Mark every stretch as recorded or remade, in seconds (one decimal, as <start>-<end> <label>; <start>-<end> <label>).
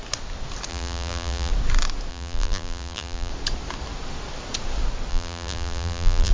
0.0-0.7 recorded; 0.7-1.5 remade; 1.5-2.1 recorded; 2.1-3.3 remade; 3.3-5.1 recorded; 5.1-6.3 remade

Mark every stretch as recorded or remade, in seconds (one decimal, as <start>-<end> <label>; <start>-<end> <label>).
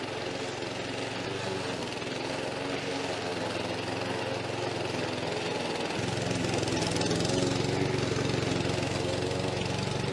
0.0-10.1 recorded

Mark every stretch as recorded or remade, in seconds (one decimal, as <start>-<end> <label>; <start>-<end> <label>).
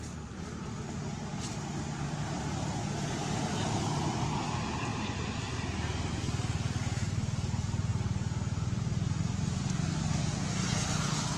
0.0-1.3 recorded; 1.3-2.2 remade; 2.2-4.9 recorded; 4.9-6.1 remade; 6.1-11.4 recorded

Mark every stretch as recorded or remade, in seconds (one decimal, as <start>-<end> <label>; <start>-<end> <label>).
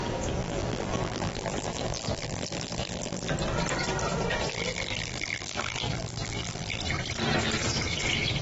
0.0-0.4 recorded; 0.4-3.3 remade; 3.3-4.5 recorded; 4.5-6.8 remade; 6.8-8.4 recorded